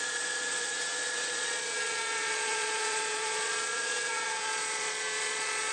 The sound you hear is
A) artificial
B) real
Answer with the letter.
A